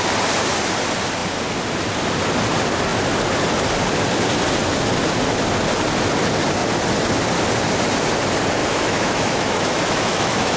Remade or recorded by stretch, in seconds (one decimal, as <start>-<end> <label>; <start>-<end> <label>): 0.0-8.6 recorded; 8.6-10.6 remade